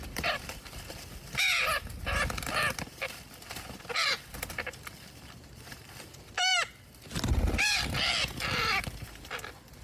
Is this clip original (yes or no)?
yes